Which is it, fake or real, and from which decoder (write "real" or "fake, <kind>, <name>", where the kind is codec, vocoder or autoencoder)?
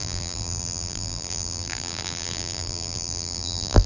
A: fake, vocoder, BigVGAN v2